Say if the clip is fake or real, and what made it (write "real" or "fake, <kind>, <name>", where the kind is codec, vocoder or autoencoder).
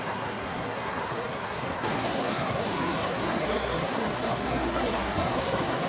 fake, codec, SNAC